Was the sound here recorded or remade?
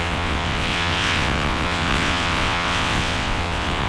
remade